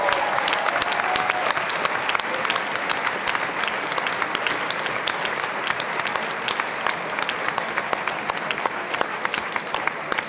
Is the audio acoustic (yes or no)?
yes